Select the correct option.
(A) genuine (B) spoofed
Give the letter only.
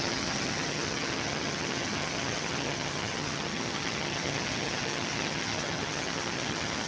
B